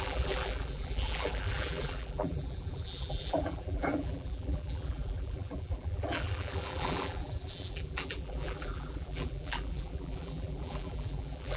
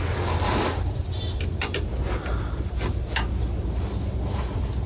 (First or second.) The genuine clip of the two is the second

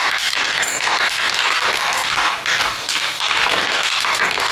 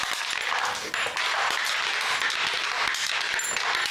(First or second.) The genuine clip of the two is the second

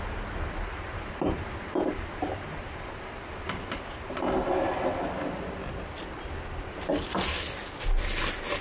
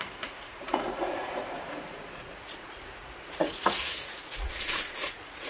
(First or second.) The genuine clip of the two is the first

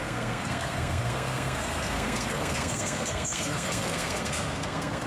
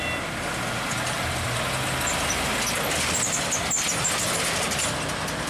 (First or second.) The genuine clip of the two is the second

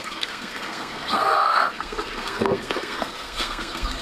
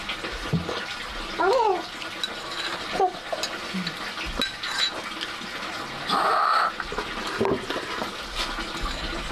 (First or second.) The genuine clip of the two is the second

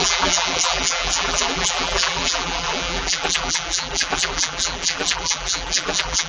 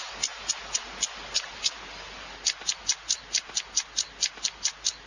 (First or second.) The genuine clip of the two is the second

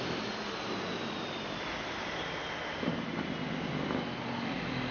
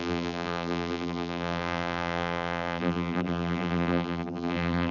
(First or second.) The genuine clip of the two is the first